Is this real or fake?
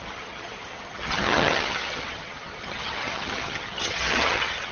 fake